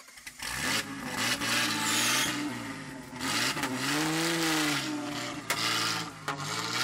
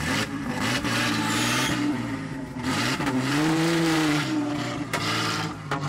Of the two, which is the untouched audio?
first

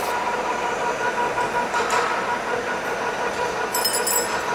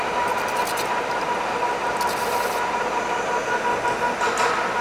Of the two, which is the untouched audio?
second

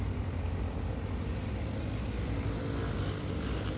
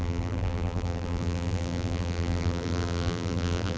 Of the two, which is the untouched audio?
first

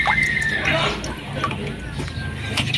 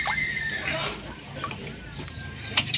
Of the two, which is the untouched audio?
first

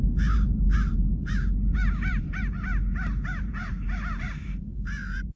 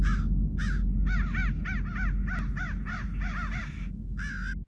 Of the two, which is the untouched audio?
second